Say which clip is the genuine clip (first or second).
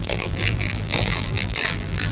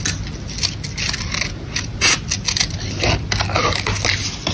second